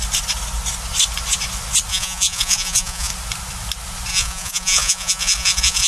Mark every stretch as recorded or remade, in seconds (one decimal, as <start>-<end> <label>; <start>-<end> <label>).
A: 0.0-1.9 recorded; 1.9-3.1 remade; 3.1-4.1 recorded; 4.1-5.9 remade